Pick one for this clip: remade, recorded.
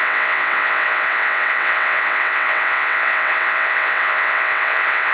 remade